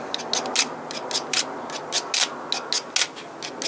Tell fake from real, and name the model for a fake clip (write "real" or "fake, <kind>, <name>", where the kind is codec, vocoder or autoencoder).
real